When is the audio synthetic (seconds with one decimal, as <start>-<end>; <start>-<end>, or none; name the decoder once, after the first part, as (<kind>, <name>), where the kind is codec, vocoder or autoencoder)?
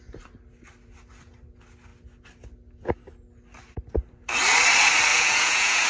5.1-5.9 (vocoder, Vocos)